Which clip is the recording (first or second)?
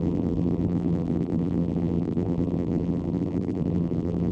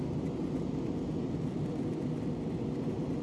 second